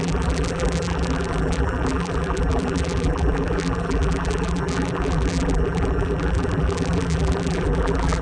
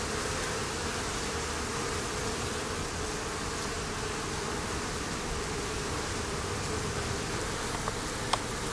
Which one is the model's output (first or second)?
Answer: first